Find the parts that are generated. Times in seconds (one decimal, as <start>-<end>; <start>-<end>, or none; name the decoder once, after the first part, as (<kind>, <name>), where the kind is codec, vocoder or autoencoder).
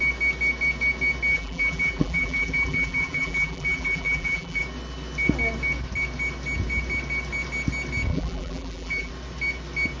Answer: 1.3-4.6 (vocoder, BigVGAN v2); 8.1-9.1